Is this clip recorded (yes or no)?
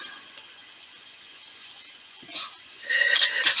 no